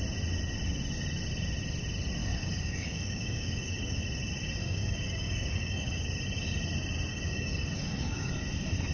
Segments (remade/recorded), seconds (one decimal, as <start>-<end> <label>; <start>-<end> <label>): 0.0-2.2 recorded; 2.2-4.0 remade; 4.0-4.6 recorded; 4.6-6.0 remade; 6.0-7.1 recorded; 7.1-8.3 remade; 8.3-8.9 recorded